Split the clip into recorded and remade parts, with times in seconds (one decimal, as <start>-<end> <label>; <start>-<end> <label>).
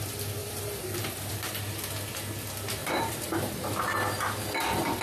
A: 0.0-0.4 recorded; 0.4-1.3 remade; 1.3-2.8 recorded; 2.8-3.8 remade; 3.8-5.0 recorded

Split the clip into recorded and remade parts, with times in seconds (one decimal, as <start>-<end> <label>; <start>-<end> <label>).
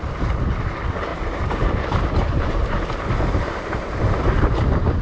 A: 0.0-1.1 recorded; 1.1-4.0 remade; 4.0-5.0 recorded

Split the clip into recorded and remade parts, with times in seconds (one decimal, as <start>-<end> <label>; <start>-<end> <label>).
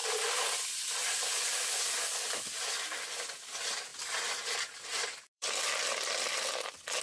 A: 0.0-2.0 remade; 2.0-3.9 recorded; 3.9-4.4 remade; 4.4-4.9 recorded; 4.9-5.8 remade; 5.8-7.0 recorded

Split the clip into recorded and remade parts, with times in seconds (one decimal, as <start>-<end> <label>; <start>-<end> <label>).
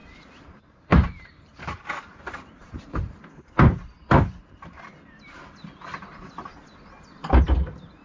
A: 0.0-3.3 remade; 3.3-4.0 recorded; 4.0-4.7 remade; 4.7-8.0 recorded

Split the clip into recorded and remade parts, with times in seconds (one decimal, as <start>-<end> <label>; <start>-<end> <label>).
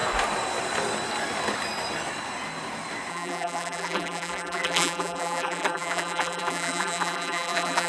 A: 0.0-3.1 recorded; 3.1-7.9 remade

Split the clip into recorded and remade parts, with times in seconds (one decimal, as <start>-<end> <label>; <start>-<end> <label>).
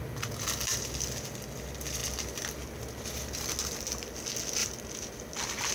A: 0.0-2.0 recorded; 2.0-3.5 remade; 3.5-4.6 recorded; 4.6-5.7 remade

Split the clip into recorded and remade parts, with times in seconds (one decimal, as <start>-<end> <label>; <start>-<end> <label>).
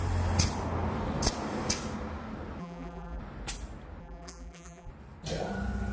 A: 0.0-2.6 recorded; 2.6-3.2 remade; 3.2-4.0 recorded; 4.0-4.9 remade; 4.9-5.9 recorded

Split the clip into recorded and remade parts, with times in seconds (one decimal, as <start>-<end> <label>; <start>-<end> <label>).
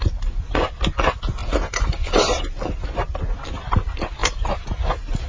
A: 0.0-4.2 recorded; 4.2-4.8 remade; 4.8-5.3 recorded